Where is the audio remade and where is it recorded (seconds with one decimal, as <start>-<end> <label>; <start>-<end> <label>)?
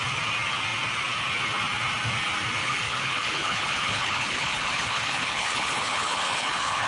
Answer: 0.0-2.6 recorded; 2.6-6.9 remade